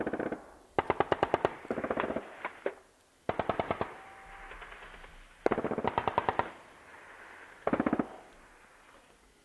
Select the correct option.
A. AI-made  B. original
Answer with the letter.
B